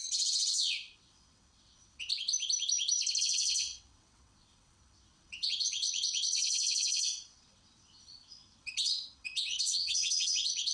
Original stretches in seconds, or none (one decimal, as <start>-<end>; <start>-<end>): 2.1-3.2